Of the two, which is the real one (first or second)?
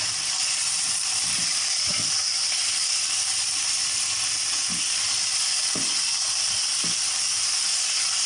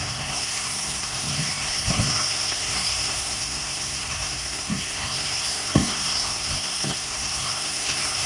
first